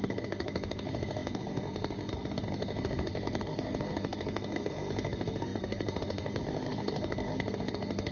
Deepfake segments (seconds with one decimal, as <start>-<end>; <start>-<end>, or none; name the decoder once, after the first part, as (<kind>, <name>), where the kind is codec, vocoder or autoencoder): 0.0-8.1 (codec, SNAC)